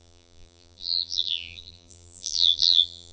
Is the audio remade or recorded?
remade